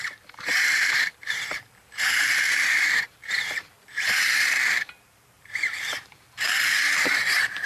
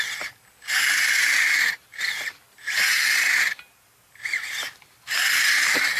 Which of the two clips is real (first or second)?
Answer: second